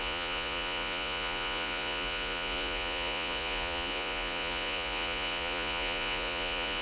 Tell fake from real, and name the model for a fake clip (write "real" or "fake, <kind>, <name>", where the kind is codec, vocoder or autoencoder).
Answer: fake, vocoder, Vocos